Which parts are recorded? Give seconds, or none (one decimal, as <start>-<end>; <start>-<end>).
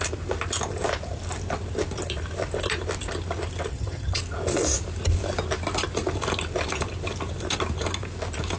0.0-3.7; 4.2-8.6